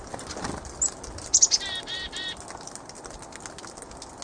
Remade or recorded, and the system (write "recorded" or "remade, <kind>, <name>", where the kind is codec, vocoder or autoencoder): recorded